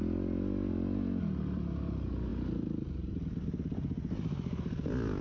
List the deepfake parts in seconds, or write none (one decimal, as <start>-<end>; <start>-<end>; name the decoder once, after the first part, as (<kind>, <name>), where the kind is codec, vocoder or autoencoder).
none